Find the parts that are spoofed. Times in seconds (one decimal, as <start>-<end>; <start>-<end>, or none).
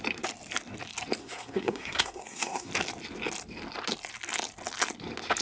1.2-2.7